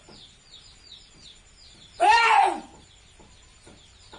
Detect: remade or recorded remade